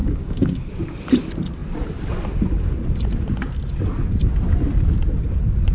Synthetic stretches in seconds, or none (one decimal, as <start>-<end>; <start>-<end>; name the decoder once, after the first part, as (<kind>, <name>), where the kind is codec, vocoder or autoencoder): 0.0-0.7 (codec, DAC)